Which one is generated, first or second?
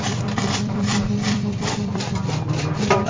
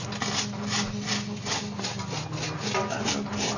first